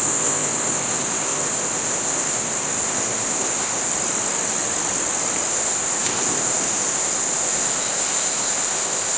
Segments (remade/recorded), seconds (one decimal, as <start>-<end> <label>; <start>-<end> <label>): 0.0-3.9 remade; 3.9-5.5 recorded; 5.5-9.2 remade